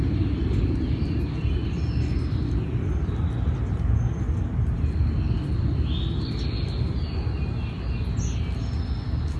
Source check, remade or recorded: recorded